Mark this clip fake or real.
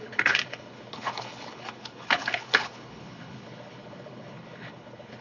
fake